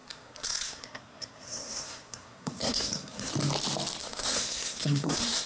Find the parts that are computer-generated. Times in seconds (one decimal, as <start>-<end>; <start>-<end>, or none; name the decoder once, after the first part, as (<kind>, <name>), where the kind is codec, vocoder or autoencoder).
0.0-3.3 (codec, SNAC); 4.0-5.5